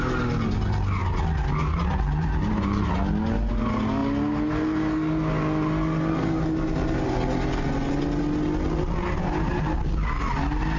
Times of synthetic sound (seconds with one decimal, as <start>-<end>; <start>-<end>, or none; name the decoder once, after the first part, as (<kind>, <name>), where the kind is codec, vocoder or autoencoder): none